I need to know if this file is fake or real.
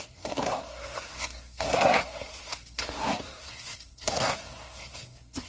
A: fake